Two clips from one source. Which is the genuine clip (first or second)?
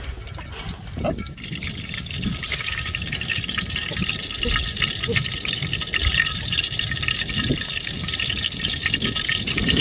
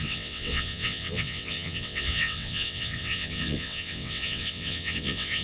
first